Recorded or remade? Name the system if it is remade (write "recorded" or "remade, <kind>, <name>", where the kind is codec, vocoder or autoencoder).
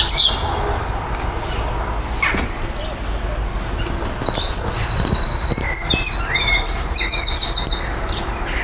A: recorded